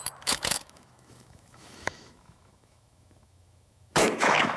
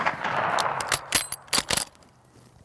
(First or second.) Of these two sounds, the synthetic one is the first